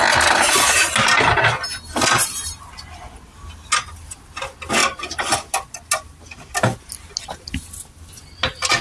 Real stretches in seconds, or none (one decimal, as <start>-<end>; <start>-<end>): 0.0-8.8